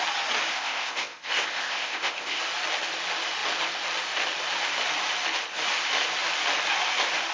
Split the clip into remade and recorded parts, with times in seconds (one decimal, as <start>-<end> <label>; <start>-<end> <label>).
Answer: 0.0-0.5 recorded; 0.5-2.4 remade; 2.4-7.3 recorded